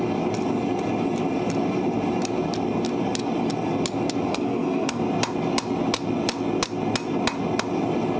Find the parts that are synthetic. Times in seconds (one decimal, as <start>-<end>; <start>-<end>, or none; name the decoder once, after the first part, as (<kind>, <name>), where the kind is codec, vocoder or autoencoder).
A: 4.3-5.0 (codec, SNAC)